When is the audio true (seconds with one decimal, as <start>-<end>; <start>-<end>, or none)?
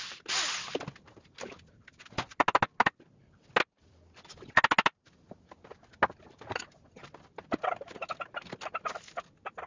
0.0-9.7